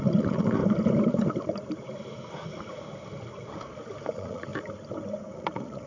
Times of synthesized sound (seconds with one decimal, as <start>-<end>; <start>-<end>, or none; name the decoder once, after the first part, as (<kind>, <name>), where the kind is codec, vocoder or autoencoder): 0.0-0.6 (vocoder, Vocos); 4.1-4.5; 5.3-5.9